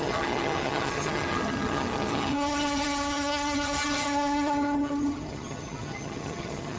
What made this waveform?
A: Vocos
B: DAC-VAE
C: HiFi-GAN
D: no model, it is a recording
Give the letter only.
C